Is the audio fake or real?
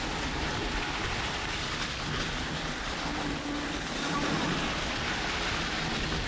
real